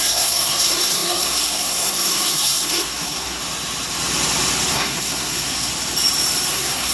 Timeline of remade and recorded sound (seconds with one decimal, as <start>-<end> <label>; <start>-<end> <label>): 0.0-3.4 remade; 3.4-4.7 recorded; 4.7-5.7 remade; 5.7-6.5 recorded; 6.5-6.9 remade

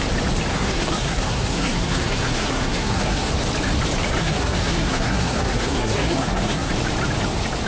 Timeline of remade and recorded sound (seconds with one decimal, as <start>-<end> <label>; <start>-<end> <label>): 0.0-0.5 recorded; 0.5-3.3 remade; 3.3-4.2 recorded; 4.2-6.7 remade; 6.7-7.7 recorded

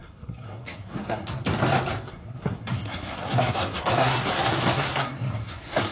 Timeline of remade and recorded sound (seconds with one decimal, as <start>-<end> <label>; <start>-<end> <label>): 0.0-1.5 remade; 1.5-2.1 recorded; 2.1-5.9 remade